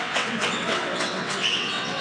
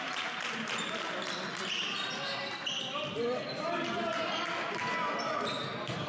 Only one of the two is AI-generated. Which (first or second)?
first